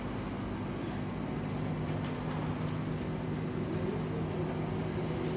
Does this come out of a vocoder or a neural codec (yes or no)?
no